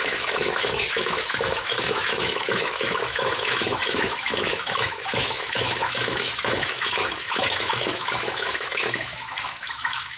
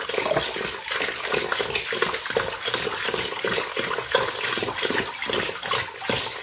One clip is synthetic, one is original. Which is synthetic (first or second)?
first